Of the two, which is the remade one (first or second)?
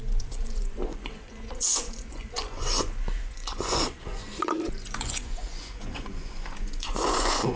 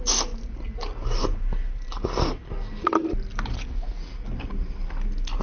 first